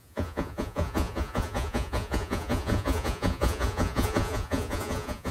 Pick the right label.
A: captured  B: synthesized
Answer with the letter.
B